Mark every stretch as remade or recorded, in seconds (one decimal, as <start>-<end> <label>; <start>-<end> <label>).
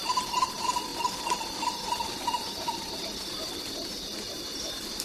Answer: 0.0-5.0 recorded